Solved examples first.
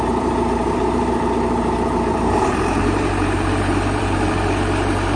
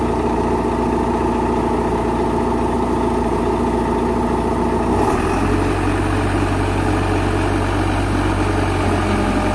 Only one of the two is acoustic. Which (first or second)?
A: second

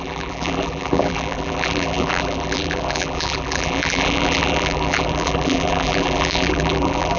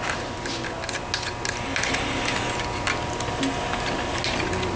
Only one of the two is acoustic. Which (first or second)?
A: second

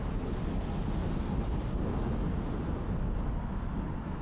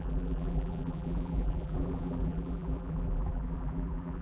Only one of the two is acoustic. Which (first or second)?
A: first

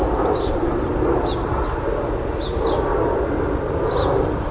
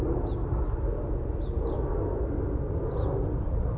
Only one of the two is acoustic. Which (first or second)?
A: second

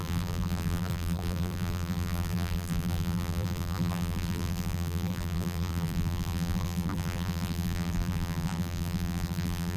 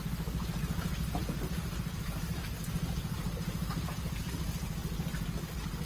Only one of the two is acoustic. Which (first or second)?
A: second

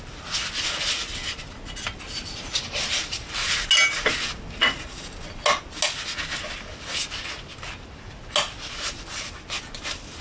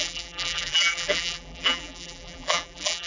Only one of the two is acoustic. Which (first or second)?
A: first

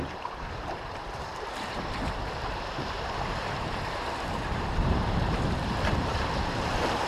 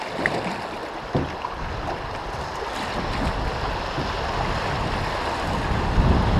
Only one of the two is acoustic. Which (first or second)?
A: second